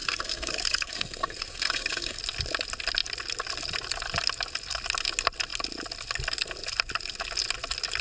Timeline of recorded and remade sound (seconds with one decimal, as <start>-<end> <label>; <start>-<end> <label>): 0.0-2.2 remade; 2.2-8.0 recorded